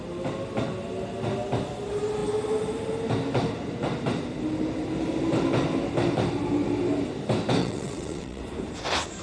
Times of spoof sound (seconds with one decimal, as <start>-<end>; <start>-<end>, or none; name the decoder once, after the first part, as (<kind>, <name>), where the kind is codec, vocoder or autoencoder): 7.6-8.4 (vocoder, WaveNeXt)